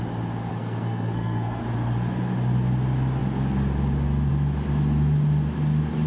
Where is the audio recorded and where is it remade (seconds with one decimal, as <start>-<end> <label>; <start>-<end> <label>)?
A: 0.0-0.5 recorded; 0.5-1.6 remade; 1.6-6.1 recorded